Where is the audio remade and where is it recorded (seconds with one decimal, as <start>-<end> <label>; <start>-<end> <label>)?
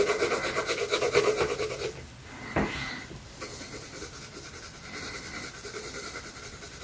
0.0-6.8 recorded